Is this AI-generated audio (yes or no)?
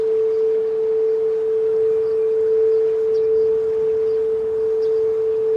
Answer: no